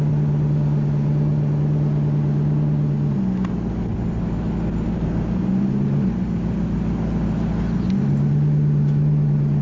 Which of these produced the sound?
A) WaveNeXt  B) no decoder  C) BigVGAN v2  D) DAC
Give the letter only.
B